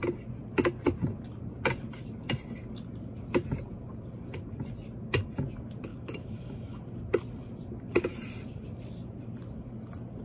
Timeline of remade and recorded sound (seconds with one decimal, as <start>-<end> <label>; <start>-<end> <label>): 0.0-5.9 recorded; 5.9-6.8 remade; 6.8-10.2 recorded